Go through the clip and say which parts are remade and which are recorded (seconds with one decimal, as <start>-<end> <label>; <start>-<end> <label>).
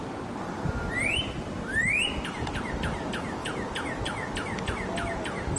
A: 0.0-5.6 recorded